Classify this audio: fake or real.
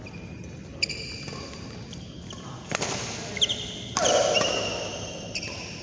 real